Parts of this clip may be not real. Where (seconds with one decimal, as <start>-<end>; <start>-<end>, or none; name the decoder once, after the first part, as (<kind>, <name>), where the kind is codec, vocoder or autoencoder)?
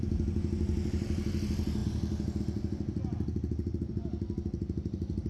none